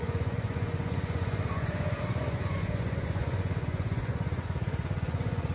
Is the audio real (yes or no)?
no